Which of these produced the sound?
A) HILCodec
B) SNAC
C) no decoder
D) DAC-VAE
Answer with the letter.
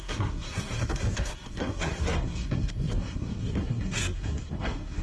B